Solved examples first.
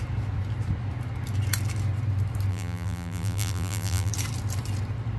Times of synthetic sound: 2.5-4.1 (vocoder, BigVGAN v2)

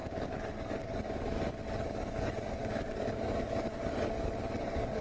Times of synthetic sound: 0.0-5.0 (codec, DAC)

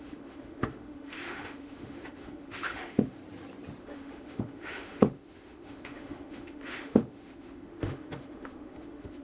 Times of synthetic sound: 0.0-3.2 (autoencoder, DAC-VAE); 3.8-9.2